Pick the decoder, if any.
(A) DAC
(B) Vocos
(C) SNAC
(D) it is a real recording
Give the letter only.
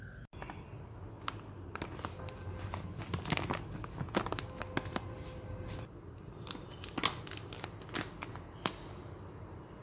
D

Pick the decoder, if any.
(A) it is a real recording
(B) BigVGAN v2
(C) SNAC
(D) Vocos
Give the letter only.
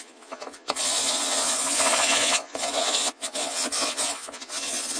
D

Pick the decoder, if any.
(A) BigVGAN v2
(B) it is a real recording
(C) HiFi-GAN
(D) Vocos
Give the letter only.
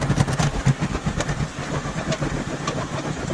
A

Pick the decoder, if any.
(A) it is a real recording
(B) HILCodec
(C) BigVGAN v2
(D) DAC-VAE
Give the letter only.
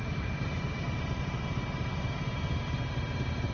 C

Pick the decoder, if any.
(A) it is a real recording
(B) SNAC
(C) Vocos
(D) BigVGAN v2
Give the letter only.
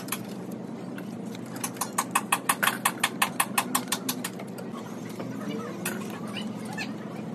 A